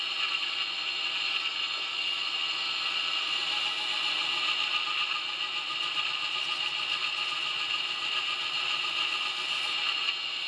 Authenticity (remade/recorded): recorded